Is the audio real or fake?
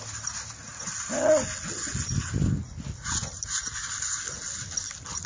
real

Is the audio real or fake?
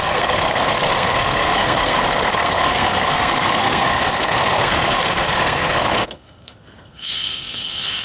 fake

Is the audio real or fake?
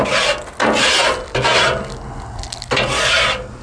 real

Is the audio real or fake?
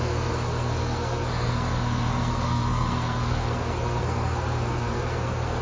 fake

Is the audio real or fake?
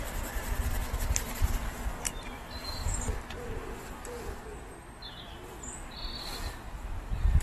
real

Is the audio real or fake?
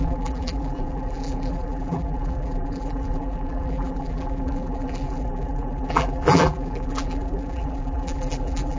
fake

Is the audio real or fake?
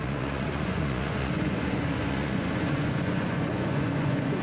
fake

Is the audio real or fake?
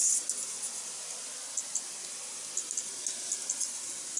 real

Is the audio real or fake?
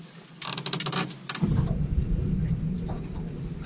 real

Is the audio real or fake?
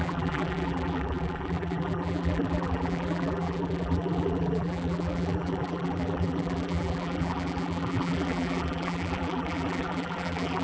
fake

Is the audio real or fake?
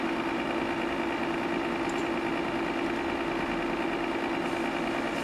real